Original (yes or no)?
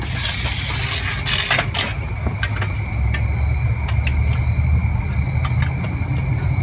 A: yes